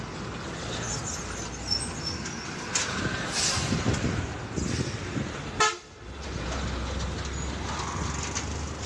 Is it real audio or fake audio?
real